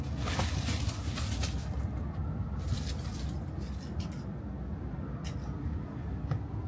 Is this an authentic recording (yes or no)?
yes